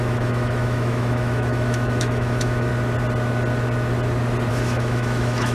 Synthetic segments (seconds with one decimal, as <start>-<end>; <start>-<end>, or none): 0.0-2.7; 4.5-5.5